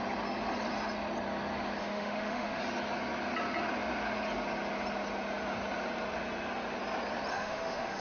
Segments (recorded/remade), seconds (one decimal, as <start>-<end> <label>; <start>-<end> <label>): 0.0-1.8 recorded; 1.8-2.6 remade; 2.6-7.3 recorded; 7.3-8.0 remade